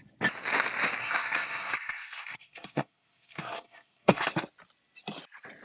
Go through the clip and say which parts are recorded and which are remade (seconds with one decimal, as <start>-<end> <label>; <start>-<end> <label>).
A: 0.0-1.0 recorded; 1.0-4.3 remade; 4.3-5.6 recorded